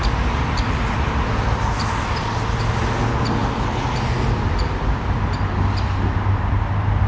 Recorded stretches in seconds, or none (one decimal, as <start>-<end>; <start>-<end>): 0.0-7.1